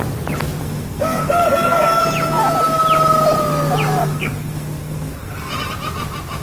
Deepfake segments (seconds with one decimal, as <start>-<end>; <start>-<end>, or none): 0.6-2.0; 4.0-5.5